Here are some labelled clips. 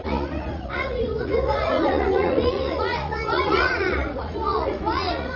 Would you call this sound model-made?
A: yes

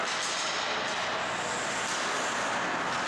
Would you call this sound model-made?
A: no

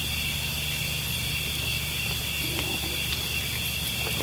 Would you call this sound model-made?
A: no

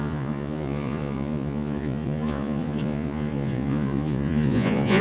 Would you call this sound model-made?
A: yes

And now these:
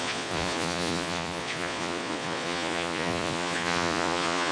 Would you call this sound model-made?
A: yes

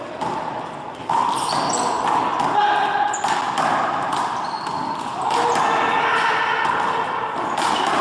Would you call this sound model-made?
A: no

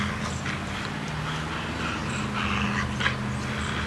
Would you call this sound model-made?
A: no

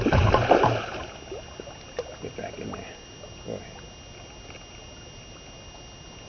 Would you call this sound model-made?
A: no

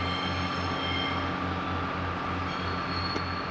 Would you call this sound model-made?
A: no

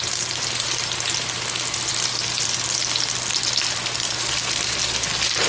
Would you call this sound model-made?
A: no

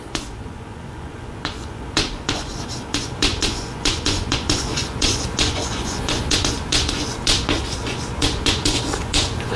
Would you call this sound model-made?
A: yes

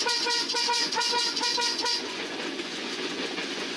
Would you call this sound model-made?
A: yes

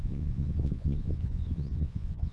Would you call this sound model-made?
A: yes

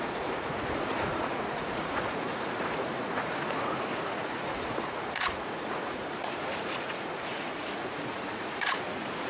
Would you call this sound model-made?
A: yes